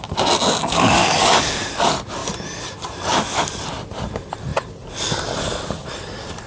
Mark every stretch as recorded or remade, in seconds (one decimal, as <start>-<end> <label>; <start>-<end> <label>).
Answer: 0.0-0.6 recorded; 0.6-1.7 remade; 1.7-3.1 recorded; 3.1-3.6 remade; 3.6-6.5 recorded